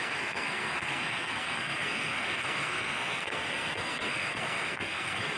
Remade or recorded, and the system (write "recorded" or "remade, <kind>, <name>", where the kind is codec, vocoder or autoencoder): remade, codec, SNAC